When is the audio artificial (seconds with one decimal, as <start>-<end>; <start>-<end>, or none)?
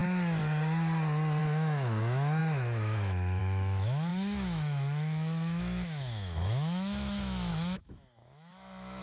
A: 1.4-9.0